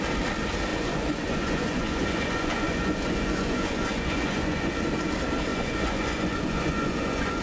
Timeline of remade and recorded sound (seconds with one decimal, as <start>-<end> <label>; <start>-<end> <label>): 0.0-0.7 recorded; 0.7-4.7 remade; 4.7-5.5 recorded; 5.5-7.4 remade